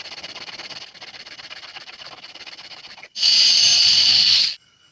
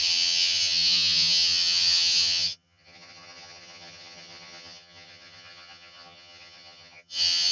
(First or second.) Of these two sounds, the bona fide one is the first